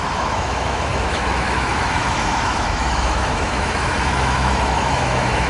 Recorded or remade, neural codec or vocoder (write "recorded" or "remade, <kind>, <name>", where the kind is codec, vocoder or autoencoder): remade, autoencoder, DAC-VAE